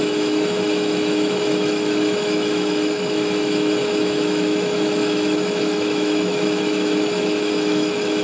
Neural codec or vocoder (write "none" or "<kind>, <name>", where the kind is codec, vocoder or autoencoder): autoencoder, DAC-VAE